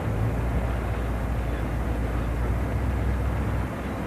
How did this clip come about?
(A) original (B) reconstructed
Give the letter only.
A